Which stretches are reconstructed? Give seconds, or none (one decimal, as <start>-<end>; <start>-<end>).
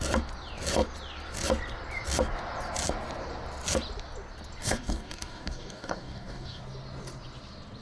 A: 4.6-6.6